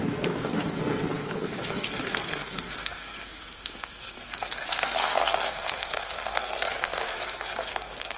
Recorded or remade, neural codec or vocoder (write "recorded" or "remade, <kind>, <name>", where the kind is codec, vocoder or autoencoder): remade, codec, SNAC